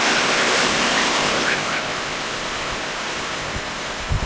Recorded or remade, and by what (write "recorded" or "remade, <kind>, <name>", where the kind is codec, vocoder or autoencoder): remade, codec, ZipCodec